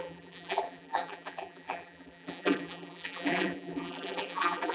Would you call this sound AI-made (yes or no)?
yes